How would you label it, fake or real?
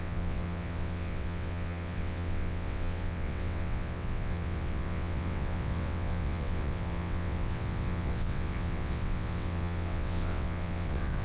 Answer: fake